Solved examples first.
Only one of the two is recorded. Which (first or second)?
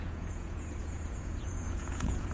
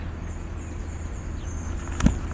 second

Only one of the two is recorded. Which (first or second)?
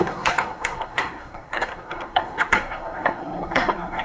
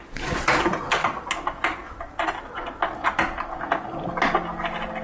second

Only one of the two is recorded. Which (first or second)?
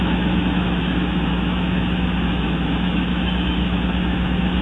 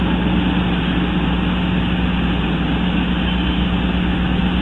second